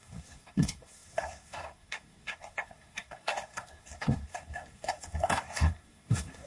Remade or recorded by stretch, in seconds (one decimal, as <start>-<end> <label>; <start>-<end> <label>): 0.0-6.5 remade